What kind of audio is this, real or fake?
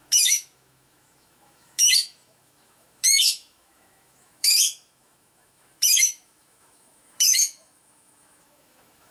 fake